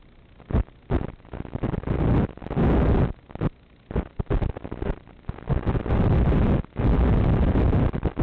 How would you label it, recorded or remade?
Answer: recorded